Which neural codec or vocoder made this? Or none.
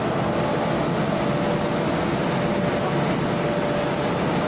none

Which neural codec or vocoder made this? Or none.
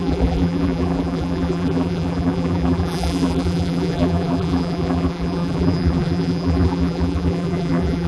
vocoder, BigVGAN v2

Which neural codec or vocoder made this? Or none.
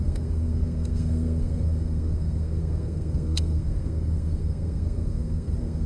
codec, SNAC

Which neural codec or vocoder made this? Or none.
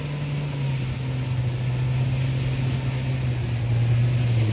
none